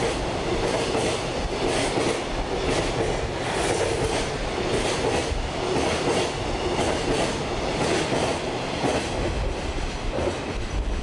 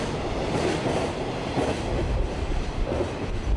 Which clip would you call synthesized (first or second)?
second